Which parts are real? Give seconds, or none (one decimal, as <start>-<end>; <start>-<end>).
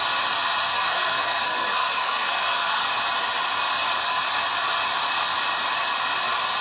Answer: 0.0-0.7; 2.9-6.6